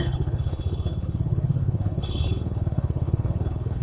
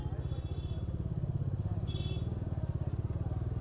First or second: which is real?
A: second